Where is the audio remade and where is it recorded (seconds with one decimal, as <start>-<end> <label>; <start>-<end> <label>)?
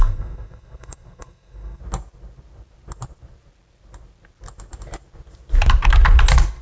0.0-1.8 remade; 1.8-6.6 recorded